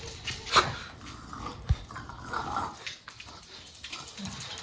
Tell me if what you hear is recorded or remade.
recorded